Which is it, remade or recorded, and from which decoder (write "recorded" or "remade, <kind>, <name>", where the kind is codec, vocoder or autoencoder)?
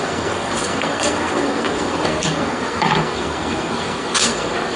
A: remade, codec, SNAC